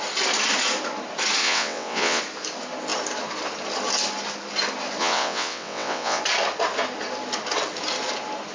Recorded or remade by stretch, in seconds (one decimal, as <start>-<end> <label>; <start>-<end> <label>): 0.0-1.4 recorded; 1.4-2.2 remade; 2.2-5.0 recorded; 5.0-6.2 remade; 6.2-8.5 recorded